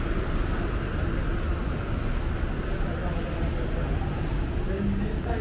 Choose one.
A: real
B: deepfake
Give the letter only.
A